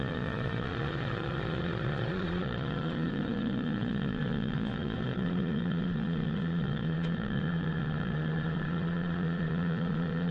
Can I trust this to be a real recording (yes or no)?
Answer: no